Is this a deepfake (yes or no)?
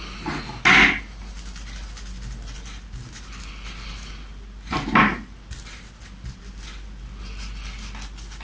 no